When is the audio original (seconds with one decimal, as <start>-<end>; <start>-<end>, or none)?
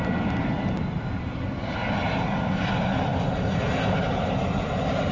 0.0-3.1; 3.6-5.1